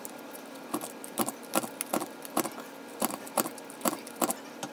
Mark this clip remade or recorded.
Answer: recorded